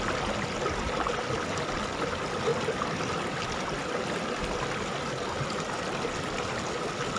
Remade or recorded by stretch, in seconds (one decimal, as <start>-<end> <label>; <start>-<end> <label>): 0.0-7.2 recorded